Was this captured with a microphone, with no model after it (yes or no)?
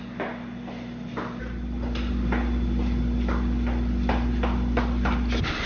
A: yes